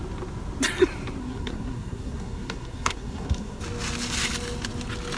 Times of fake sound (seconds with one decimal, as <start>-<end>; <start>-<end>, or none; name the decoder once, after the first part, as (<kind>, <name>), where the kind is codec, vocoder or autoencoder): 1.2-3.6 (codec, SNAC)